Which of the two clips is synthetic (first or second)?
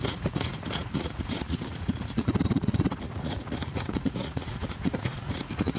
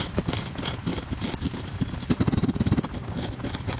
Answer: first